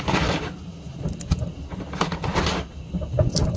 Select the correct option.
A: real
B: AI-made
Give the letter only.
A